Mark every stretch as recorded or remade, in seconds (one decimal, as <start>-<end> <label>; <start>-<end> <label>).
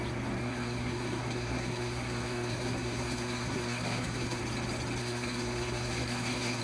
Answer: 0.0-0.4 recorded; 0.4-4.4 remade; 4.4-5.0 recorded; 5.0-6.6 remade